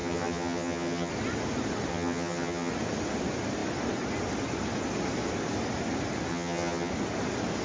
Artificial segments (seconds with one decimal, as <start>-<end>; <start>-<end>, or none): 0.0-1.1; 1.9-2.7; 6.3-6.9